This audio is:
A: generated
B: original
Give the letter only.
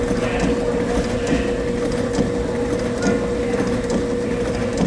B